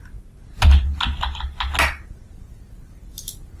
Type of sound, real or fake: real